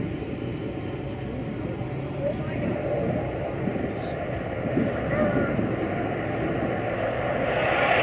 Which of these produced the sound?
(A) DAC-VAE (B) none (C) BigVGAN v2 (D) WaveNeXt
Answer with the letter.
C